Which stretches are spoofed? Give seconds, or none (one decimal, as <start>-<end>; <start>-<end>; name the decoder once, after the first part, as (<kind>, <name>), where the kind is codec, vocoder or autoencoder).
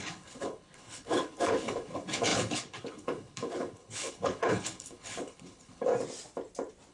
0.0-5.9 (codec, HILCodec)